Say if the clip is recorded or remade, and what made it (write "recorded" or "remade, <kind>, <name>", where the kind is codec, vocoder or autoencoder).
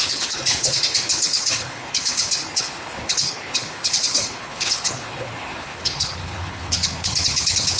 remade, codec, HILCodec